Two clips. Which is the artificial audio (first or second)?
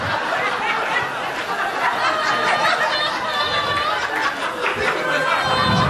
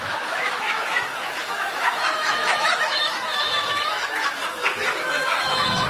second